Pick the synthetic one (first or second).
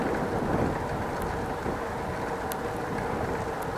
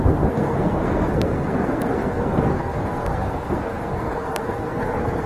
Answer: second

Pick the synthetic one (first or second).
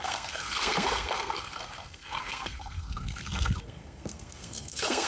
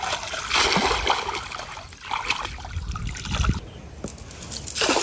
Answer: first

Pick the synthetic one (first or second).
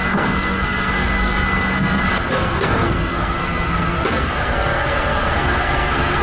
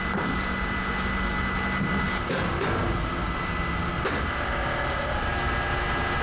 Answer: first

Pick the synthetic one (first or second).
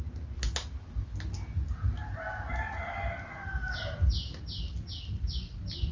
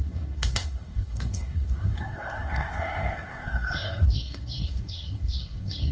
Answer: second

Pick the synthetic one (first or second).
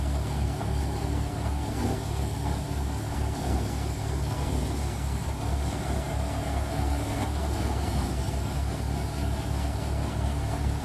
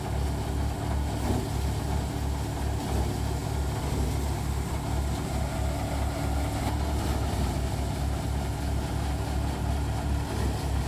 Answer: first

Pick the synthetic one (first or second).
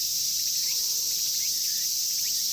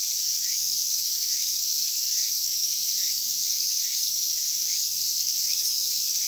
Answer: second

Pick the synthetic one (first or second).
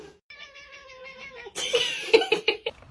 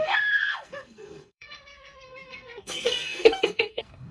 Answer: second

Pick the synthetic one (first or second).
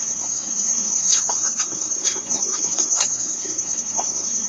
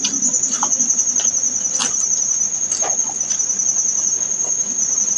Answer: first